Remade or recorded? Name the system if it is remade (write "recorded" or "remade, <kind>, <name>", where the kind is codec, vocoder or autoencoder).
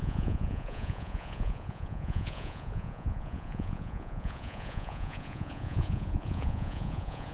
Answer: remade, vocoder, Vocos